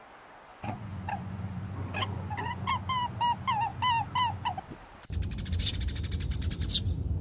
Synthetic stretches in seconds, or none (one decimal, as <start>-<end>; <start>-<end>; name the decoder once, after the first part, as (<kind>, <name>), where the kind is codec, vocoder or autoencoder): 0.5-1.6 (vocoder, Vocos); 2.0-2.7